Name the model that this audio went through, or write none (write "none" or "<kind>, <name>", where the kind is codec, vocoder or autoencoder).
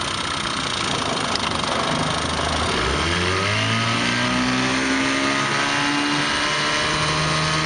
none